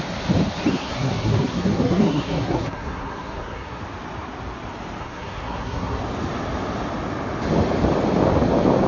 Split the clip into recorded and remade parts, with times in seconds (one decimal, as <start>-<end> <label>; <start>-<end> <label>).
0.0-0.7 recorded; 0.7-3.8 remade; 3.8-5.0 recorded; 5.0-6.0 remade; 6.0-8.9 recorded